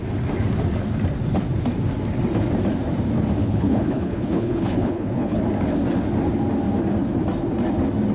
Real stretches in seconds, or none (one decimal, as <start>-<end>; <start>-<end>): 0.0-3.4; 5.4-8.1